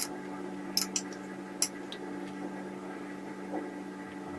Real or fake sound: real